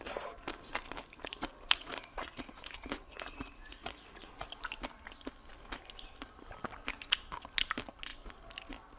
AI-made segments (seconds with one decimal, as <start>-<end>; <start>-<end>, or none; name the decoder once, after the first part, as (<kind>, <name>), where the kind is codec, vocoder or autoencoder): 1.8-4.3 (vocoder, Vocos)